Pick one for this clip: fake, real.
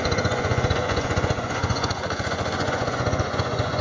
fake